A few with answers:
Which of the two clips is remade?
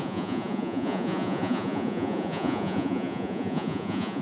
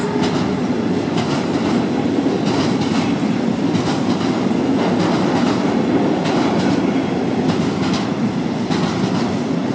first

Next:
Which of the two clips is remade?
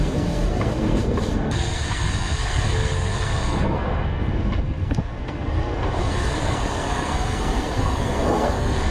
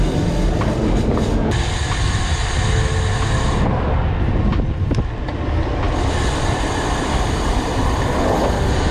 first